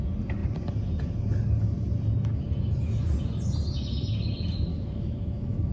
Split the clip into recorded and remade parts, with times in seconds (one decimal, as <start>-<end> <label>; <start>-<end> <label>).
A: 0.0-4.7 recorded; 4.7-5.7 remade